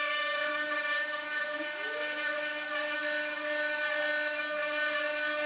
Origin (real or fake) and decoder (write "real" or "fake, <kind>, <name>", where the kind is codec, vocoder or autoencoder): real